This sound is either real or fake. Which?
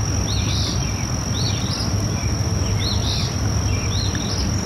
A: real